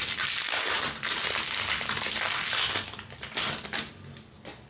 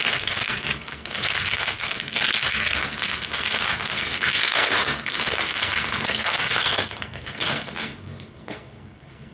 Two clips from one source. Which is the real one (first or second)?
first